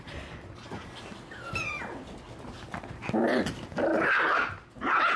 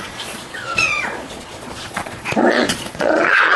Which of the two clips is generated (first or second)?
second